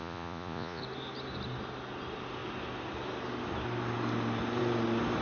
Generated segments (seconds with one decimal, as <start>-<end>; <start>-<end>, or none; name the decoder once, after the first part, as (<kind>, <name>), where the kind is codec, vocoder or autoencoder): 0.0-0.8 (vocoder, Vocos)